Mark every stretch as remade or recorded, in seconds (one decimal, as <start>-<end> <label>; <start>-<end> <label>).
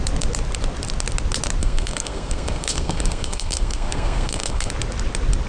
0.0-1.6 recorded; 1.6-4.7 remade; 4.7-5.5 recorded